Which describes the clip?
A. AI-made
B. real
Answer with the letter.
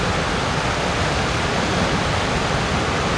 B